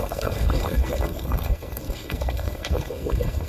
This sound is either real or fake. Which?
fake